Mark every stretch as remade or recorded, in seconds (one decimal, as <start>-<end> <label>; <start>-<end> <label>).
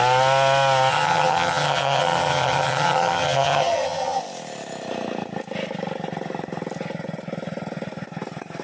0.0-0.9 recorded; 0.9-4.2 remade; 4.2-8.6 recorded